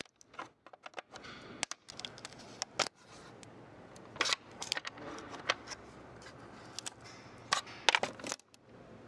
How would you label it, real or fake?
real